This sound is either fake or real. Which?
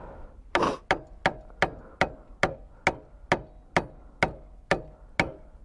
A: real